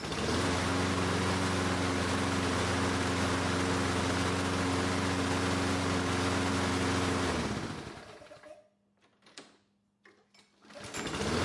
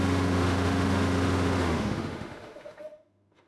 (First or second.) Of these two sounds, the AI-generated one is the second